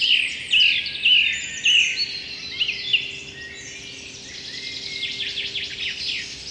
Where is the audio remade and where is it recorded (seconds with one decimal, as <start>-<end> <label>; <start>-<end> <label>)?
0.0-6.5 recorded